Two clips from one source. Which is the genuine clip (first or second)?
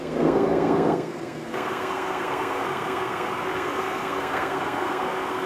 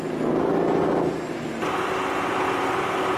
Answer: second